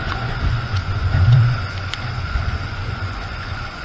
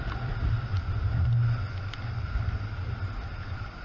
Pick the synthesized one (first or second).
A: first